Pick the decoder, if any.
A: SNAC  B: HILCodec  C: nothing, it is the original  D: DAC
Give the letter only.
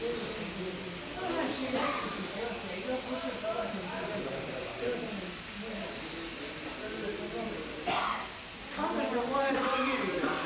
C